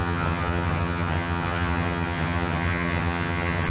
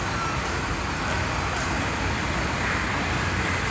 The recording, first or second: second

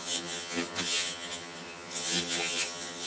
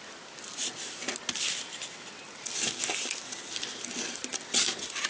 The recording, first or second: second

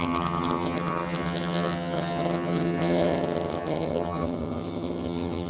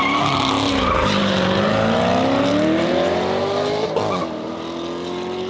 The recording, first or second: second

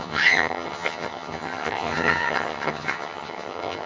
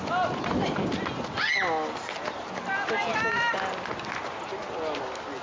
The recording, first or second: second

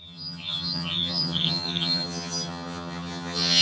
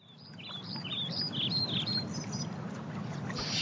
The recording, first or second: second